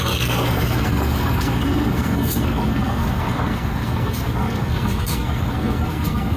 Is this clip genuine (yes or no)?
no